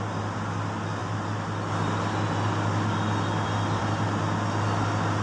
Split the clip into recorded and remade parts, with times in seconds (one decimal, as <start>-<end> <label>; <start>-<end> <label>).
0.0-5.2 recorded